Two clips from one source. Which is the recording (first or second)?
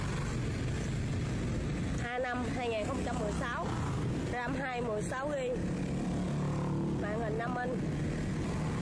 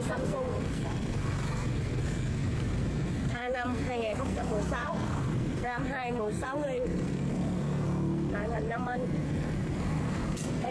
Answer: first